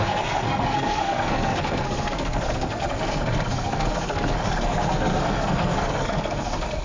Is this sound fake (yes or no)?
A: yes